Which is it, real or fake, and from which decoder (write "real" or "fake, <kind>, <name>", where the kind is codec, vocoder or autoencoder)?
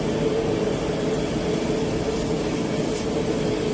real